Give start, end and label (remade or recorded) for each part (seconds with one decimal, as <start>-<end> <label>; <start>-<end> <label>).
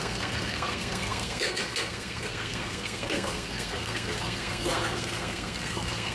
0.0-6.1 remade